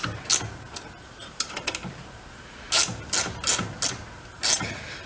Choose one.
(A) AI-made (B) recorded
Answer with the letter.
B